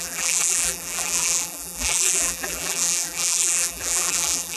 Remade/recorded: remade